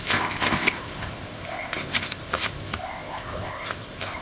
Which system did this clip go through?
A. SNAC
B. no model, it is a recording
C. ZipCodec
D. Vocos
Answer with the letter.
C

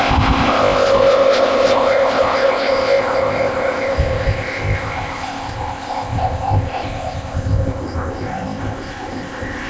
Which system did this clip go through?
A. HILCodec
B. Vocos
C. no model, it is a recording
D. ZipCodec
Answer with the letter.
D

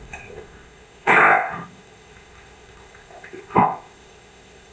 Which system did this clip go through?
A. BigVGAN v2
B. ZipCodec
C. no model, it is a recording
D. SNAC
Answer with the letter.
B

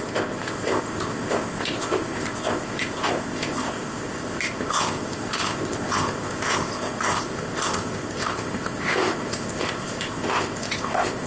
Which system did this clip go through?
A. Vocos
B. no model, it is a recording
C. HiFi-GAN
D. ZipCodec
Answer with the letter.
D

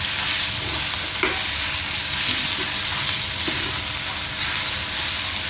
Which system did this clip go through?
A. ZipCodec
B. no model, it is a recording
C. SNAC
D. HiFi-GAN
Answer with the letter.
B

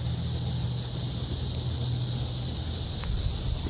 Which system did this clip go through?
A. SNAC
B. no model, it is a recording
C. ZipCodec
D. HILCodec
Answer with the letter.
B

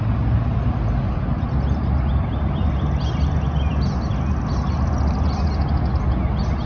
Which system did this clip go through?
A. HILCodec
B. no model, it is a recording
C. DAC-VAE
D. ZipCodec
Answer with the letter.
B